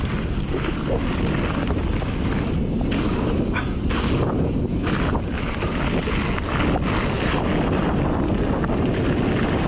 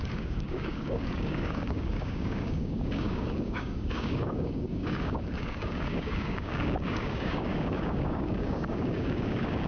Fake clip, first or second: second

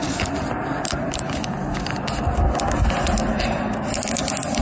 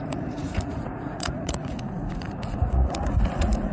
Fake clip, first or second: second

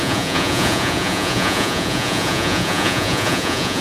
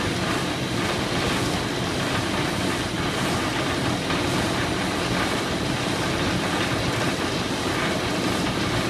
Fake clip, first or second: first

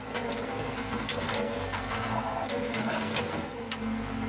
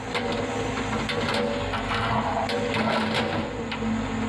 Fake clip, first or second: first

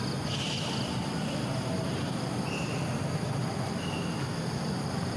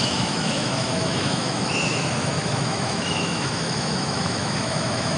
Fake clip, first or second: second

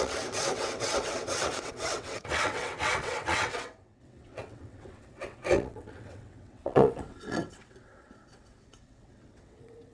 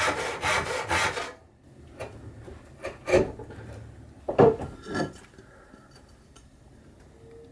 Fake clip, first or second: first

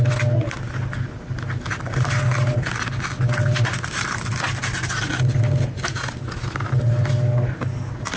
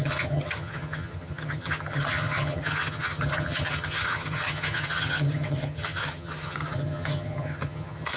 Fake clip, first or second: second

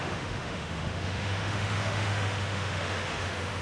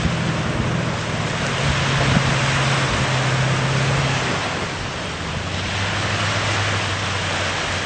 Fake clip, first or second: first